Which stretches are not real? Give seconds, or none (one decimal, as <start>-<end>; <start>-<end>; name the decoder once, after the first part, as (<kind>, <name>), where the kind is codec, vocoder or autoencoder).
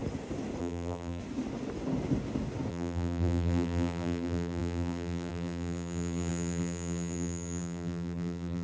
0.6-1.2 (vocoder, BigVGAN v2); 2.7-8.6